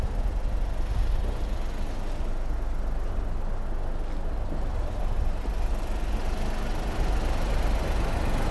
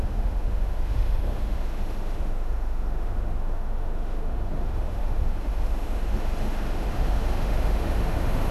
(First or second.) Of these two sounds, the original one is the first